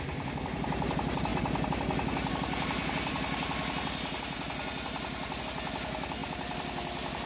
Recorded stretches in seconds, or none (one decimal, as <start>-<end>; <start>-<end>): 0.0-7.3